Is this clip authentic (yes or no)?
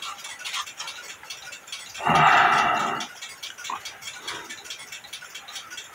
yes